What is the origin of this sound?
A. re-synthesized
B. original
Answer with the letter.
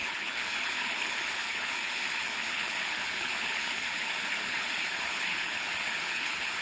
A